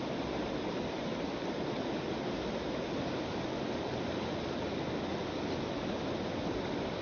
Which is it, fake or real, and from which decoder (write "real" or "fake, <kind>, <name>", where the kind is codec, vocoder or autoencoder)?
real